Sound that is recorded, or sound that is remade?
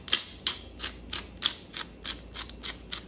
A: recorded